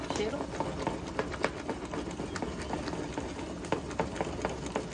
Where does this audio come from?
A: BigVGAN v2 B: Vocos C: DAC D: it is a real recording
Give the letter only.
D